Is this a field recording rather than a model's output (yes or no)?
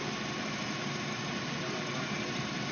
yes